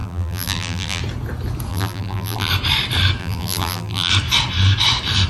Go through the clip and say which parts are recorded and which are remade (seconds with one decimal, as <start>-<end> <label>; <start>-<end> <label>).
0.0-1.0 remade; 1.0-1.7 recorded; 1.7-2.5 remade; 2.5-3.2 recorded; 3.2-4.1 remade; 4.1-5.3 recorded